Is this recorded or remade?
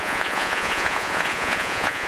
remade